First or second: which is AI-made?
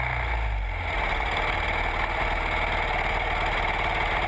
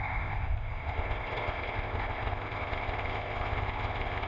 second